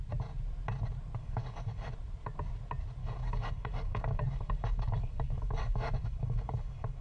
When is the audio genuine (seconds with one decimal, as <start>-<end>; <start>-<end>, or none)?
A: 0.0-1.2; 1.9-3.0